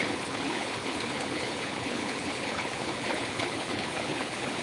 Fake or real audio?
fake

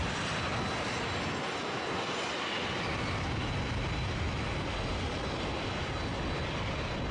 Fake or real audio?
real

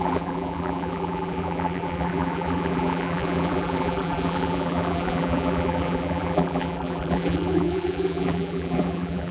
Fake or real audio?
fake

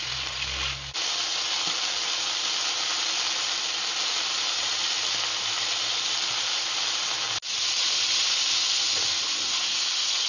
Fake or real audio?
real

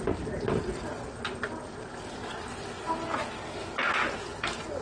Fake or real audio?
real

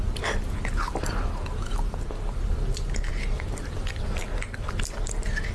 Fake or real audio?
real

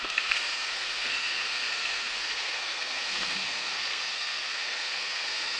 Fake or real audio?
fake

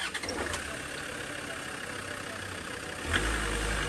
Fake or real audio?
real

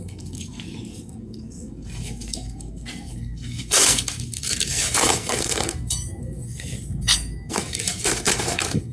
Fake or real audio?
fake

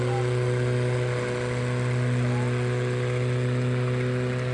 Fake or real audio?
real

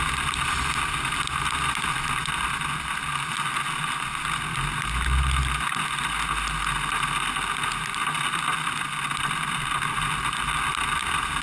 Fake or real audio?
real